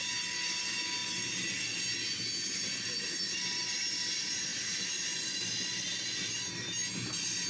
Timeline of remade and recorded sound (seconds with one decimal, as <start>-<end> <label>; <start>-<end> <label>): 0.0-7.5 recorded